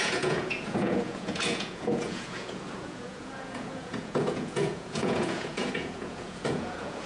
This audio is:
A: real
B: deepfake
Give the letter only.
B